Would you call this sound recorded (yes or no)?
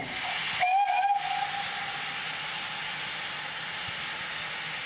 yes